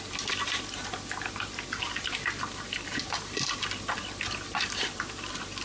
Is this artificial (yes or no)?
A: no